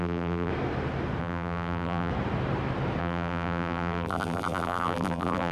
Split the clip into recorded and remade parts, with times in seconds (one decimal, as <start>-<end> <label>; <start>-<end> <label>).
0.0-0.5 remade; 0.5-1.2 recorded; 1.2-2.1 remade; 2.1-3.0 recorded; 3.0-5.5 remade